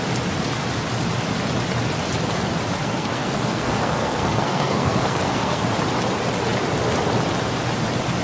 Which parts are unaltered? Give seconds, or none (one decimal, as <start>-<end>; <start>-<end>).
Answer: 0.0-2.8; 5.6-8.2